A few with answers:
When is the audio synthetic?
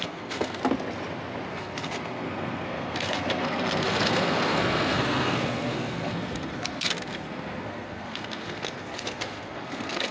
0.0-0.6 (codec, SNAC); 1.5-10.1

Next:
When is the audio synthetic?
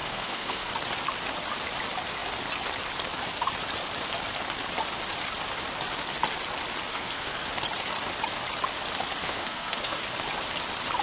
0.0-0.7 (codec, SNAC); 6.9-7.5; 9.2-10.0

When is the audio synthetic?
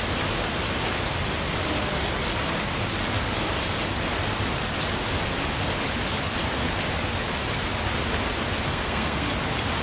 8.7-9.3 (codec, SNAC)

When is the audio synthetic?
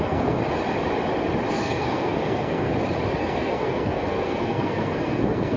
0.0-0.4 (codec, SNAC); 1.5-2.7; 3.2-5.6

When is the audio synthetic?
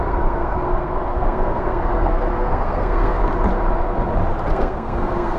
0.0-3.2 (codec, SNAC); 4.5-5.4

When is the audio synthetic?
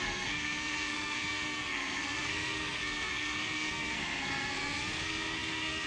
0.0-5.9 (codec, SNAC)